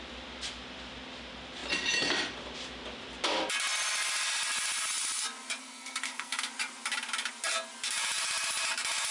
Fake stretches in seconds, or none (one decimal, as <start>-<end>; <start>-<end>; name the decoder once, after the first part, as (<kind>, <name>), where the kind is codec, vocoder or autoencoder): 5.6-6.5 (codec, SNAC)